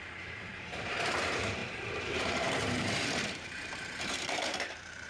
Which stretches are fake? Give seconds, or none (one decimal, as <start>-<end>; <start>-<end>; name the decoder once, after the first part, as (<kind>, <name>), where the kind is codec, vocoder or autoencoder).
0.0-5.1 (vocoder, BigVGAN v2)